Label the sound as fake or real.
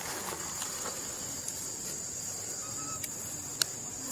real